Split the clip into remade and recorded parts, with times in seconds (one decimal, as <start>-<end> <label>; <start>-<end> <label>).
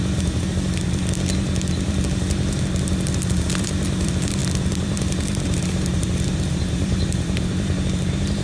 0.0-0.5 remade; 0.5-3.6 recorded; 3.6-4.4 remade; 4.4-4.9 recorded; 4.9-8.4 remade